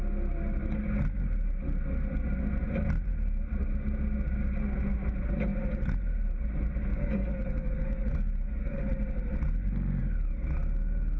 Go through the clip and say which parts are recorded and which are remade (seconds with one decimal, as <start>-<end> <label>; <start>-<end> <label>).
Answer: 0.0-6.9 recorded; 6.9-8.9 remade; 8.9-11.2 recorded